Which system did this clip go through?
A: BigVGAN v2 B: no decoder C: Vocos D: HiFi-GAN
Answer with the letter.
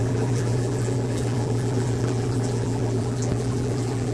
A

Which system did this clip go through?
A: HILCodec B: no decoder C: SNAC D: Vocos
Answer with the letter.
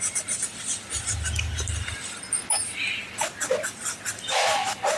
B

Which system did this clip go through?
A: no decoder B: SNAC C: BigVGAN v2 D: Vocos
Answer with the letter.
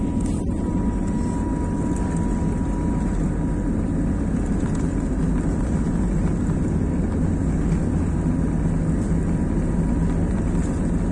A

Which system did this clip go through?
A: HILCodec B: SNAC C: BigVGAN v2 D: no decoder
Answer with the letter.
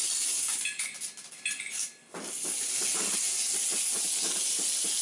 D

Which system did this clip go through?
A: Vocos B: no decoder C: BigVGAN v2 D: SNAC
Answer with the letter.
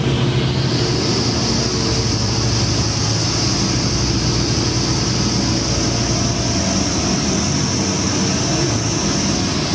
B